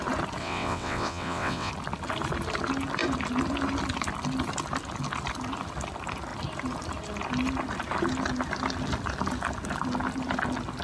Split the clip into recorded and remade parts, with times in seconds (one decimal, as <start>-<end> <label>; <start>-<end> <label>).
0.0-0.4 recorded; 0.4-1.7 remade; 1.7-10.8 recorded